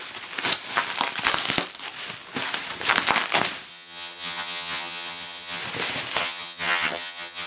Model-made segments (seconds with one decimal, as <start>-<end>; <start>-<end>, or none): 3.7-5.6; 6.2-7.5